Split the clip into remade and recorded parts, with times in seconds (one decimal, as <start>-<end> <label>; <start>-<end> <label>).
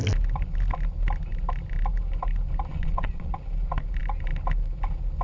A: 0.0-2.7 recorded; 2.7-3.3 remade; 3.3-5.2 recorded